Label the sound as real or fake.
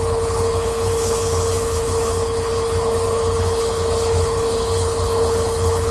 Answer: fake